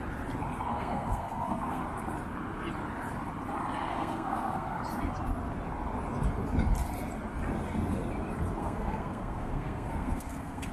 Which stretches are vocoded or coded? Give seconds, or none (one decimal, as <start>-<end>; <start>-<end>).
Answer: 0.7-1.8; 3.9-4.8; 8.6-10.7